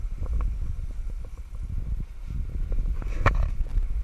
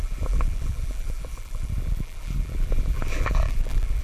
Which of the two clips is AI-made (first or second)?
second